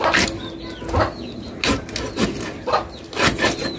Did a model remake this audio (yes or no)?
no